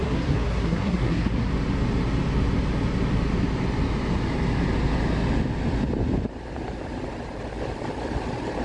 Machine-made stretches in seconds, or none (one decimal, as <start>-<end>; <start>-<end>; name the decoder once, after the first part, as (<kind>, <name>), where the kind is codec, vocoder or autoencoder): 0.0-1.5 (codec, SNAC)